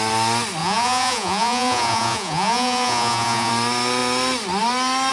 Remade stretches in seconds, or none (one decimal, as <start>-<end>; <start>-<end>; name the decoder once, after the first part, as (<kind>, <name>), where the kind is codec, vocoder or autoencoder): 0.6-3.5 (vocoder, Vocos)